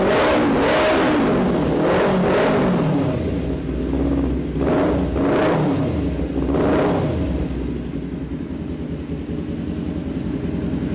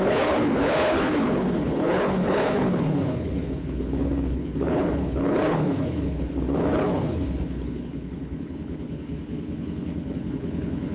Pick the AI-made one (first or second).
second